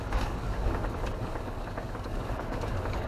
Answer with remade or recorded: remade